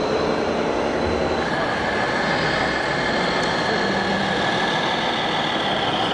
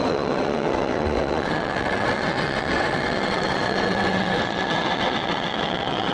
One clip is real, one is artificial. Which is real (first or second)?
first